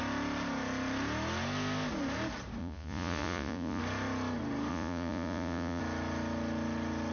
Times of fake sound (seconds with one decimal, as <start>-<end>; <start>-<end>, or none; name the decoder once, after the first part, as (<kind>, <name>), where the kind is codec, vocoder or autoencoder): 2.6-3.8 (vocoder, Vocos); 4.7-5.8